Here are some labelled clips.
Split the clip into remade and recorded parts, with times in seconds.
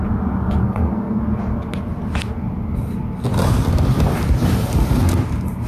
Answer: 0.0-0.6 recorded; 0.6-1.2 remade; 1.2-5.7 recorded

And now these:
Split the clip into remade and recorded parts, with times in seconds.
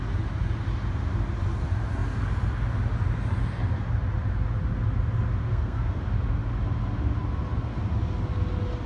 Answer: 0.0-5.5 recorded; 5.5-6.0 remade; 6.0-8.9 recorded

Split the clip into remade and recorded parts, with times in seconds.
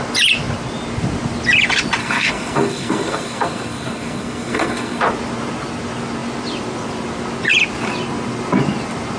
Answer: 0.0-2.0 recorded; 2.0-5.0 remade; 5.0-9.2 recorded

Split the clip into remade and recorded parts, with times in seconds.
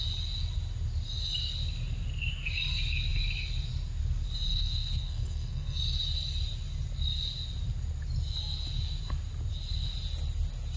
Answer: 0.0-4.5 recorded; 4.5-5.8 remade; 5.8-10.8 recorded